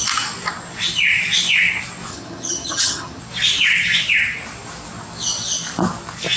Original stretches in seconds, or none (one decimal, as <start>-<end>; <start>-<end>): 0.0-2.1; 3.2-6.4